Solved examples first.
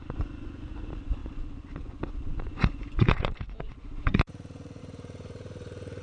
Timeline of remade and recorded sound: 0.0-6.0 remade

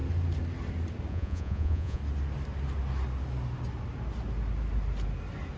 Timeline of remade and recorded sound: 0.0-1.1 recorded; 1.1-2.0 remade; 2.0-5.6 recorded